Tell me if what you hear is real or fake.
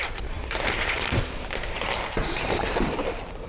fake